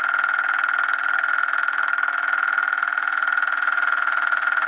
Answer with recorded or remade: recorded